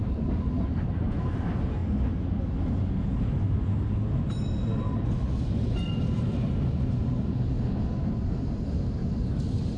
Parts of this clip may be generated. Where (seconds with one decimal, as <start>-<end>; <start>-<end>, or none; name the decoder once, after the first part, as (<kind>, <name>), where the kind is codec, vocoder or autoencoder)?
none